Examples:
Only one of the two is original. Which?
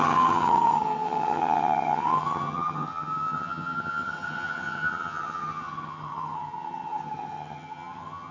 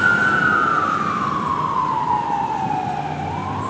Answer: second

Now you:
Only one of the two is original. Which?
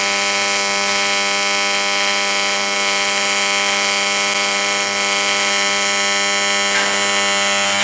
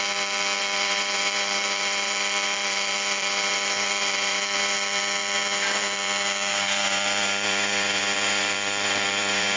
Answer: first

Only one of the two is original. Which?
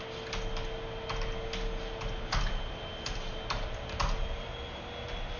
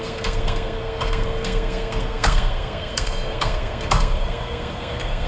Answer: first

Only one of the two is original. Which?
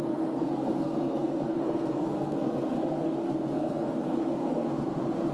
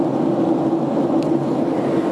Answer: second